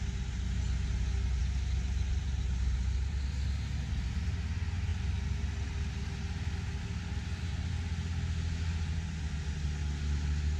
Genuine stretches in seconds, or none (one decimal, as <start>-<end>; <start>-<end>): 0.0-10.6